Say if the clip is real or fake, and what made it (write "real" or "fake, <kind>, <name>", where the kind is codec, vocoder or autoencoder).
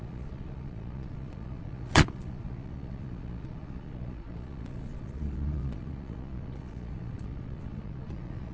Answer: fake, vocoder, Vocos